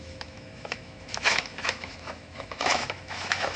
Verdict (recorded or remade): remade